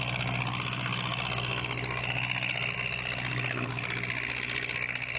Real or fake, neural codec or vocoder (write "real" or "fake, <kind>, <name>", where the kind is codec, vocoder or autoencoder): real